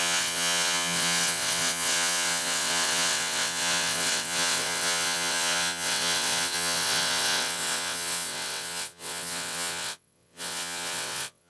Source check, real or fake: fake